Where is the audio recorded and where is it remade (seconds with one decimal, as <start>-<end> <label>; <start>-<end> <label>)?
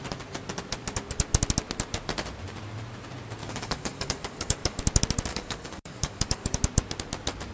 0.0-3.4 recorded; 3.4-4.8 remade; 4.8-5.3 recorded; 5.3-6.6 remade; 6.6-7.5 recorded